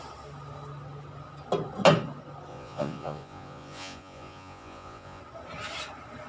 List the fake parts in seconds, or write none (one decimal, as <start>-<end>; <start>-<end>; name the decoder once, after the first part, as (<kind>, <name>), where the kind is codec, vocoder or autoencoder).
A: 2.5-5.2 (vocoder, Vocos)